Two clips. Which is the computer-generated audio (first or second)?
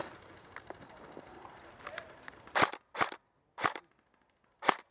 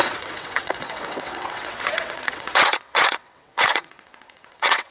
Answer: second